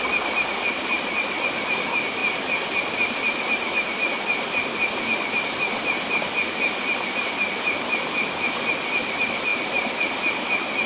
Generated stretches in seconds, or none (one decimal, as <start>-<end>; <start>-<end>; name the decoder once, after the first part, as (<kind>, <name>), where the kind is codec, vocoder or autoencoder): none